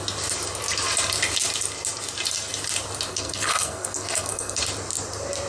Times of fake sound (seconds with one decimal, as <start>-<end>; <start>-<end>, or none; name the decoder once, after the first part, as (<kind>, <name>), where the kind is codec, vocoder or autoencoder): 3.1-4.6 (codec, SNAC)